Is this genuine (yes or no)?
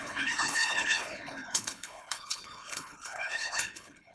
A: no